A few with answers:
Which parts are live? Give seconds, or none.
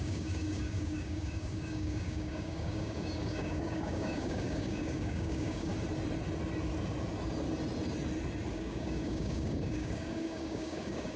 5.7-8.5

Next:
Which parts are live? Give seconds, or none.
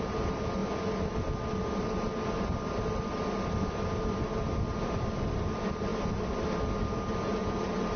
0.0-8.0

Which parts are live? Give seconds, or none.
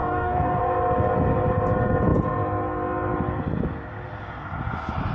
0.6-5.1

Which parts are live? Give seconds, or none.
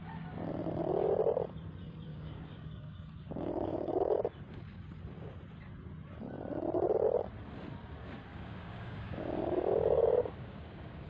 0.0-2.1; 4.2-8.3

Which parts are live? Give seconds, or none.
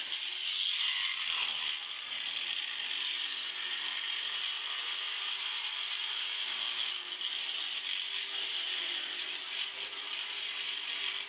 0.0-6.1; 7.2-11.3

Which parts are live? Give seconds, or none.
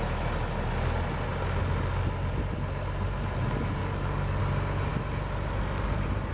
0.0-3.8; 4.4-6.3